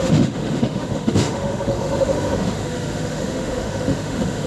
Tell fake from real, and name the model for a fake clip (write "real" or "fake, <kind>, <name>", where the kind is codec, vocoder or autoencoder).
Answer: fake, autoencoder, DAC-VAE